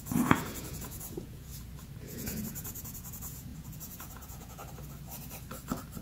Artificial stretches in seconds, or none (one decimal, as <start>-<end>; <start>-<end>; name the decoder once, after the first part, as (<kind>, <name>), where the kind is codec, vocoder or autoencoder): 0.0-1.5 (vocoder, Vocos); 2.0-4.6